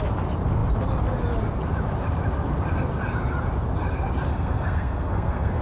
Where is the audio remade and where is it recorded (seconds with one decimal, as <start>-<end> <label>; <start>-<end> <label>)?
0.0-4.3 recorded; 4.3-5.6 remade